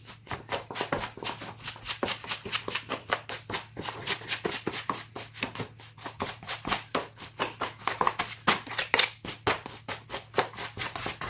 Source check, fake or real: real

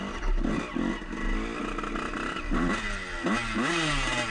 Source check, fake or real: real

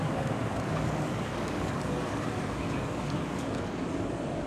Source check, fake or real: fake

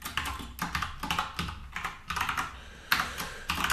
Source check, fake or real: real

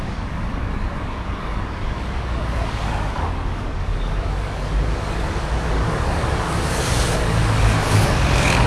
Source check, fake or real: fake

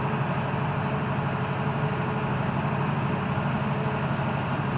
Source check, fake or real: real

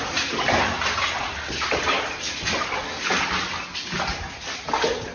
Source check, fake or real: real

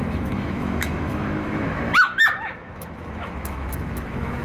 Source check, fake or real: fake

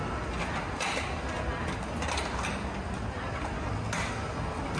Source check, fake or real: real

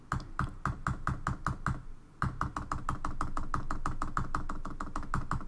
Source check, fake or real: real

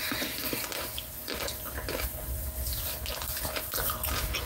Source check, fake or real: real